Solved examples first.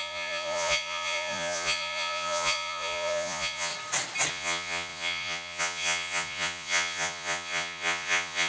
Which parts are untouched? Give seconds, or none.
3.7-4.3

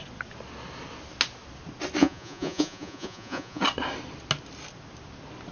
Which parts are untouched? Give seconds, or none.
0.0-2.0; 3.6-5.5

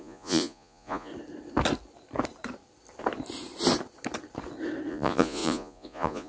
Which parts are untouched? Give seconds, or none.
1.1-4.9

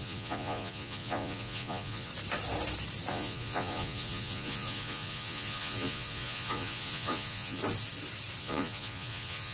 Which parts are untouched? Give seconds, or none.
2.1-3.1; 7.6-8.4

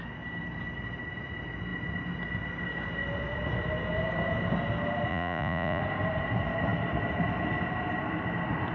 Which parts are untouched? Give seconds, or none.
0.0-5.1; 5.8-8.7